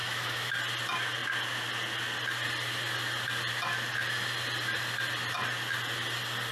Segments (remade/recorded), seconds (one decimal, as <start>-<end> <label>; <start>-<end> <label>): 0.0-0.5 remade; 0.5-6.5 recorded